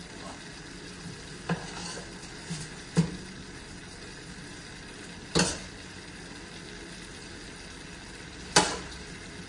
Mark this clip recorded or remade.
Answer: recorded